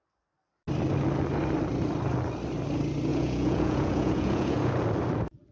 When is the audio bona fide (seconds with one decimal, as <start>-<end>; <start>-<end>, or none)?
0.0-3.1; 4.7-5.5